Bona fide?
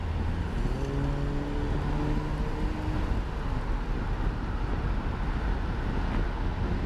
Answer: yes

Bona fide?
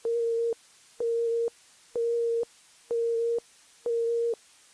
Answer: no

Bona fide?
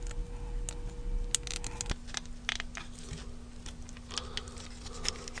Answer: yes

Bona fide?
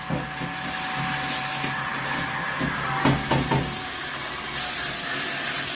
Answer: yes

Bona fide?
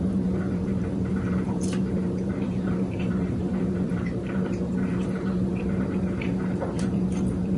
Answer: no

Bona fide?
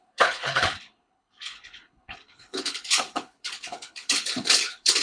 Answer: no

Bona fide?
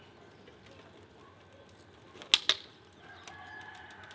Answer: yes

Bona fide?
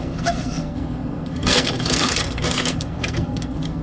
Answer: no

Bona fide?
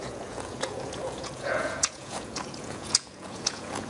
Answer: no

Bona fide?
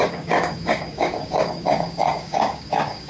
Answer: no